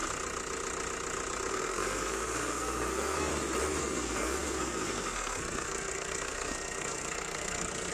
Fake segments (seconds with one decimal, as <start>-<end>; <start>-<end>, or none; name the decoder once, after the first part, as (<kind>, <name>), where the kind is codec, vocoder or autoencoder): 1.5-3.3 (codec, SNAC); 3.8-7.9